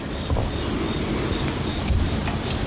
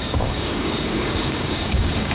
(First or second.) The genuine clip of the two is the first